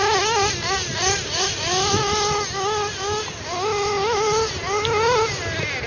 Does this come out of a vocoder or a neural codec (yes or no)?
no